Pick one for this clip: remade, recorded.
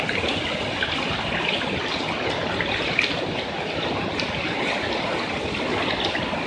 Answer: recorded